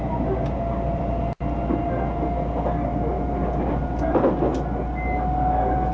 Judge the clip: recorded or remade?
recorded